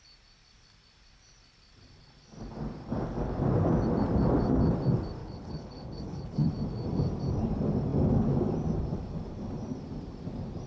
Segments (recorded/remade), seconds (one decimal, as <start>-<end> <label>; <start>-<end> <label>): 0.0-5.2 recorded; 5.2-6.5 remade; 6.5-10.7 recorded

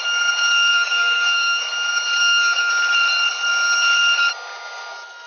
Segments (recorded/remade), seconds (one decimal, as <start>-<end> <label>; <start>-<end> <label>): 0.0-0.7 recorded; 0.7-1.6 remade; 1.6-2.2 recorded; 2.2-2.7 remade; 2.7-5.3 recorded

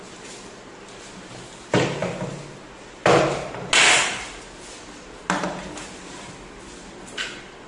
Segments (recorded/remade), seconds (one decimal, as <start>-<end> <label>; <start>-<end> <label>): 0.0-7.7 recorded

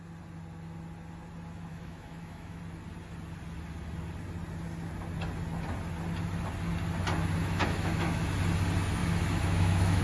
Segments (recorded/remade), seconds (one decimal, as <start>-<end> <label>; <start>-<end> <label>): 0.0-1.7 recorded; 1.7-2.6 remade; 2.6-7.4 recorded; 7.4-8.2 remade; 8.2-9.0 recorded; 9.0-10.0 remade

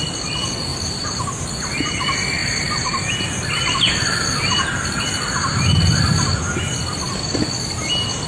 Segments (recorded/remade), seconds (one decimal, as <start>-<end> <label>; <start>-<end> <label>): 0.0-0.7 recorded; 0.7-1.6 remade; 1.6-8.3 recorded